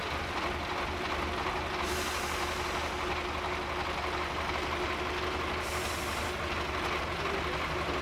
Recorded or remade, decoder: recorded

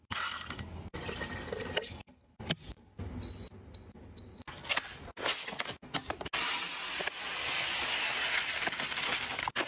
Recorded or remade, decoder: recorded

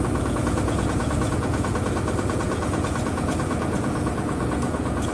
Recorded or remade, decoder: remade, vocoder, Vocos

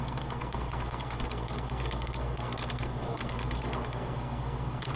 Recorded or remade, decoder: remade, codec, SNAC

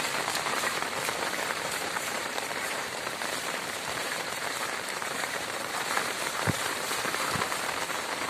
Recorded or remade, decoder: remade, vocoder, BigVGAN v2